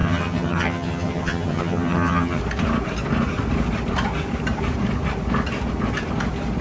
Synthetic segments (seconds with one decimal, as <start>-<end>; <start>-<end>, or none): 0.0-2.4